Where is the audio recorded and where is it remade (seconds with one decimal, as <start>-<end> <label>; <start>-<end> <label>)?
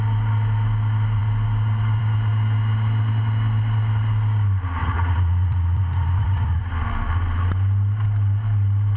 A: 0.0-4.8 recorded; 4.8-6.6 remade; 6.6-9.0 recorded